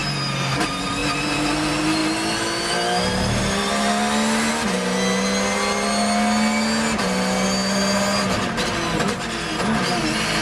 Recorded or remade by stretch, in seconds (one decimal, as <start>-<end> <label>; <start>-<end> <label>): 0.0-10.4 recorded